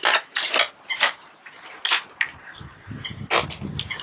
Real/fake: real